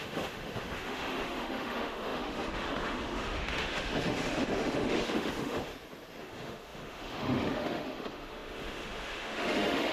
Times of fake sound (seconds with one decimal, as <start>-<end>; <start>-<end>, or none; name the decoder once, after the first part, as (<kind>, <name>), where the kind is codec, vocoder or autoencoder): 0.0-5.7 (autoencoder, DAC-VAE); 6.2-9.9